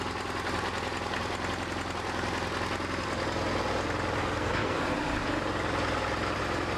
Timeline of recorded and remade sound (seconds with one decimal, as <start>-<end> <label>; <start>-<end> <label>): 0.0-4.2 recorded; 4.2-4.8 remade; 4.8-6.8 recorded